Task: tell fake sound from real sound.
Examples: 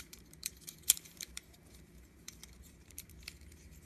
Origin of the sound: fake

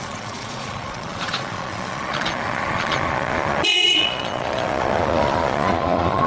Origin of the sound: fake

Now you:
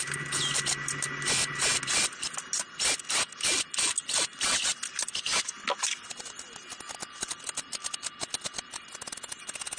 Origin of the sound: real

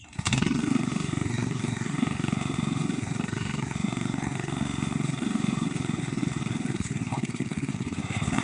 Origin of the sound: fake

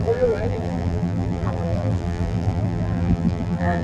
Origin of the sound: fake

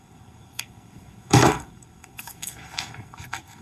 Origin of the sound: fake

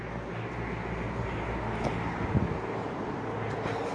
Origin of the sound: real